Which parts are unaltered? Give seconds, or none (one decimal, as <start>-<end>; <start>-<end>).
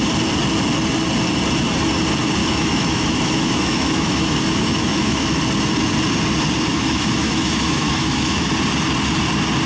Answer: 0.0-2.4; 5.4-6.7; 8.5-9.7